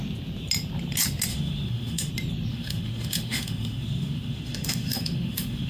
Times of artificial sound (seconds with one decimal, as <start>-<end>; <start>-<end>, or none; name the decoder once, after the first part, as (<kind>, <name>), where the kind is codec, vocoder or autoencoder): 1.3-2.1 (autoencoder, DAC-VAE); 2.5-5.7